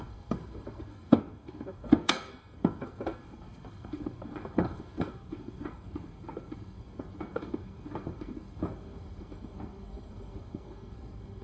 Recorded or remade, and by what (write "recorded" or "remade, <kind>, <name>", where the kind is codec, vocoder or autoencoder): remade, codec, SNAC